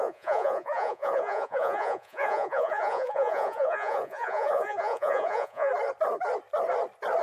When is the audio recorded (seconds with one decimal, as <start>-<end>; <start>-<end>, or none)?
5.7-7.2